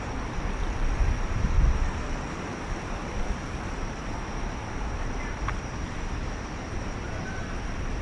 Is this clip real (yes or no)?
no